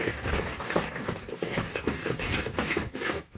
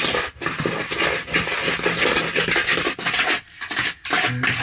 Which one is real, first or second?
second